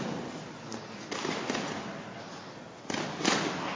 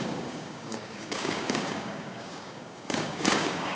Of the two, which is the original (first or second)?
first